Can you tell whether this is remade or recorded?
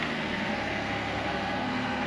remade